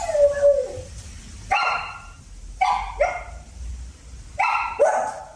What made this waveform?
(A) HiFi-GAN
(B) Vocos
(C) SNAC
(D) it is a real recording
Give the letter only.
D